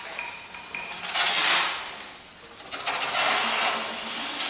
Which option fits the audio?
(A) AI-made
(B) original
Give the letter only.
B